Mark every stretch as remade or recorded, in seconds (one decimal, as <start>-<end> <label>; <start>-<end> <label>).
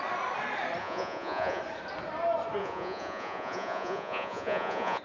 0.0-0.8 recorded; 0.8-1.6 remade; 1.6-2.6 recorded; 2.6-5.0 remade